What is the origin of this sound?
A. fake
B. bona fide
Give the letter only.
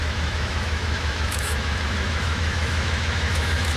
A